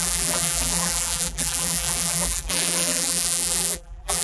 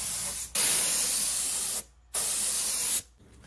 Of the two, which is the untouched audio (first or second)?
second